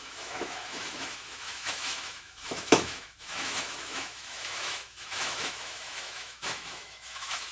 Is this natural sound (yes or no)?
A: no